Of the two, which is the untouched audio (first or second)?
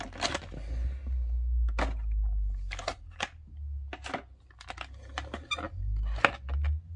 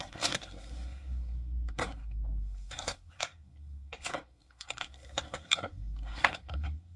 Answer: first